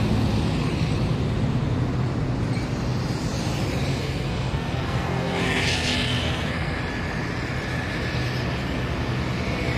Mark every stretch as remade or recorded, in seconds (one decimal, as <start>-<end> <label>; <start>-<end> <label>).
0.0-3.9 recorded; 3.9-6.8 remade; 6.8-9.8 recorded